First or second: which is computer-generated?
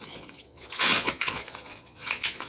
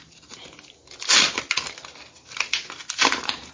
first